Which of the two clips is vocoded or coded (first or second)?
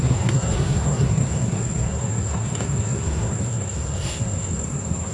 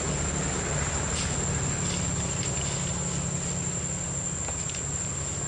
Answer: first